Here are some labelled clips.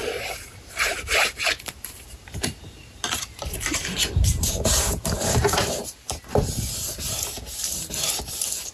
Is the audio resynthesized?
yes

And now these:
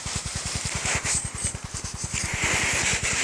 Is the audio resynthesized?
yes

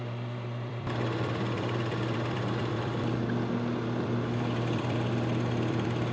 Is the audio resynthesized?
yes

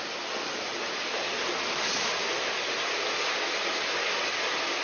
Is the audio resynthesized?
no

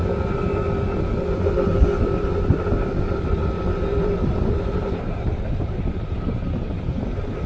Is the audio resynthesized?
yes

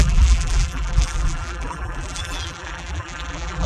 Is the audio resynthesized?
yes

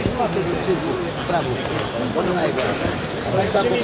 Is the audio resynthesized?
no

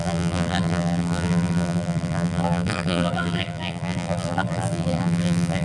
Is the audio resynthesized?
yes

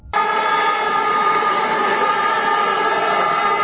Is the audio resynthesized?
yes